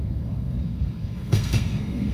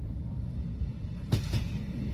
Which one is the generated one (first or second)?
first